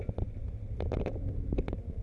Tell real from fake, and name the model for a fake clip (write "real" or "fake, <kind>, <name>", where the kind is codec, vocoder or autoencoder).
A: real